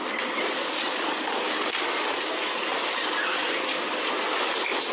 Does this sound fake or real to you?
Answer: real